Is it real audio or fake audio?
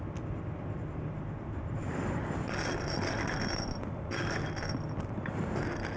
real